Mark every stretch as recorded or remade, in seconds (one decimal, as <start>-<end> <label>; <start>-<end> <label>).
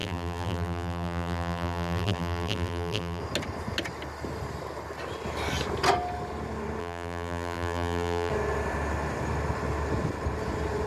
0.0-3.2 remade; 3.2-6.8 recorded; 6.8-8.3 remade; 8.3-10.9 recorded